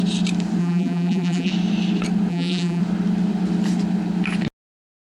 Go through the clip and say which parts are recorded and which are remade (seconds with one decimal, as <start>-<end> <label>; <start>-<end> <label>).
0.0-0.6 recorded; 0.6-1.5 remade; 1.5-2.3 recorded; 2.3-2.8 remade; 2.8-5.0 recorded